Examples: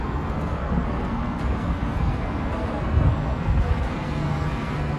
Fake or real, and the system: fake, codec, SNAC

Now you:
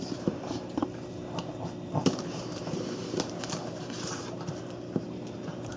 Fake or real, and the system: fake, vocoder, BigVGAN v2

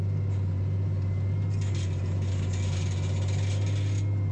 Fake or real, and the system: real